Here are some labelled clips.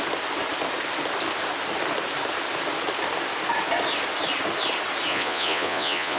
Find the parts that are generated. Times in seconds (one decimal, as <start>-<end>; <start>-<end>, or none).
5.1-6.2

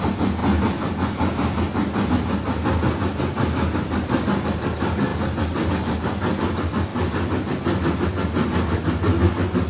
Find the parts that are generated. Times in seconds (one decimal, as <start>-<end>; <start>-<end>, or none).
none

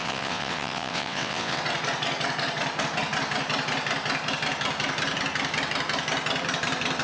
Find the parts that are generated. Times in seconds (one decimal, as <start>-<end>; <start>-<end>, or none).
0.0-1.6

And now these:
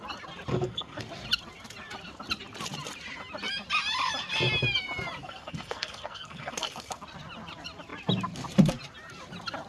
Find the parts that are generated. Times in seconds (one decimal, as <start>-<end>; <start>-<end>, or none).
0.5-1.0; 5.2-7.0